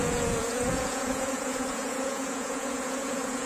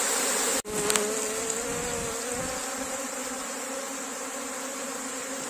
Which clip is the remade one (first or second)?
first